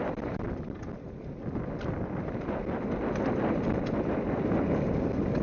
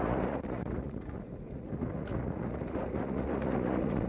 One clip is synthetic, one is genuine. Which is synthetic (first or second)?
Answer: second